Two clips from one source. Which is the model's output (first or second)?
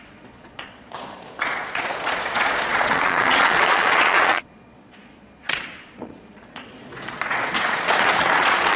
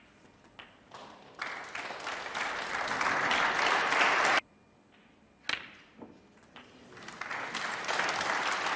first